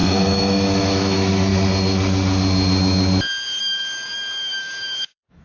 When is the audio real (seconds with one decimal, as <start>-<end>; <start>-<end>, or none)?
1.5-3.6